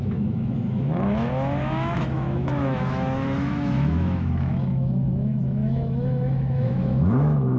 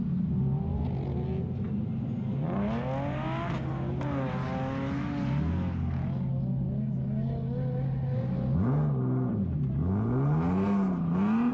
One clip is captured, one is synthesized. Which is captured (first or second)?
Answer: second